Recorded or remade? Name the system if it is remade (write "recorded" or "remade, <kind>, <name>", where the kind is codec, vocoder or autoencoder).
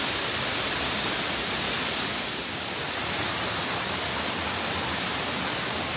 remade, vocoder, BigVGAN v2